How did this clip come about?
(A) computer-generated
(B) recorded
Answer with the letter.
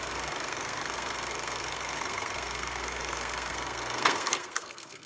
A